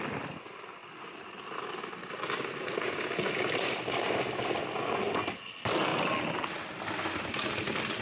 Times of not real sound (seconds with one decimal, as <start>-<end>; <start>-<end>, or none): 0.8-1.6; 5.9-6.8

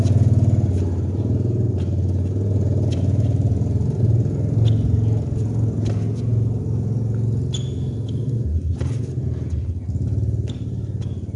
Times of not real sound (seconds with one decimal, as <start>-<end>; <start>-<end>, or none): none

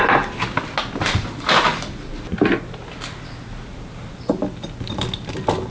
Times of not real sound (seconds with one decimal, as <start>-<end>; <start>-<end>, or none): 3.7-4.4

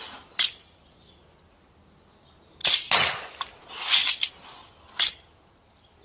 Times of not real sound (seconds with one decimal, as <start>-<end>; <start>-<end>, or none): none

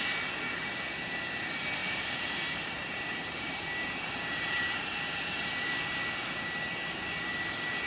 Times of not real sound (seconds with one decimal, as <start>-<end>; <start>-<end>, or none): 1.8-5.7

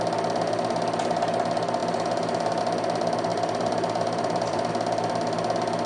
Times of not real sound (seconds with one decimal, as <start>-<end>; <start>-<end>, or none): 3.3-4.7

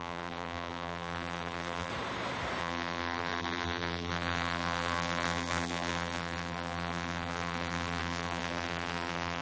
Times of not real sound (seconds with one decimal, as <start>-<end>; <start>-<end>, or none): 0.0-1.9; 2.6-9.4

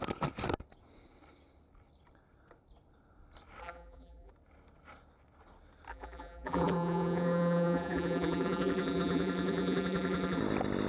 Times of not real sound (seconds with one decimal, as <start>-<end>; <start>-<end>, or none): 3.6-4.3; 5.9-10.4